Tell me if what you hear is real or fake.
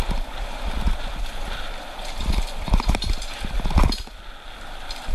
real